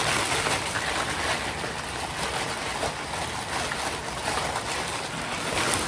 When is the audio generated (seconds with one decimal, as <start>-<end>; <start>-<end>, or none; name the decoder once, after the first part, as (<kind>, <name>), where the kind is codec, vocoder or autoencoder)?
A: none